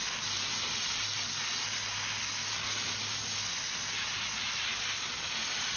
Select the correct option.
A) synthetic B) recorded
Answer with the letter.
B